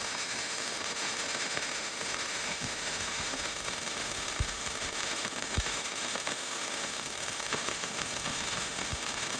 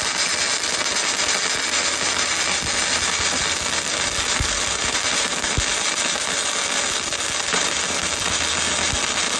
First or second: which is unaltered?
second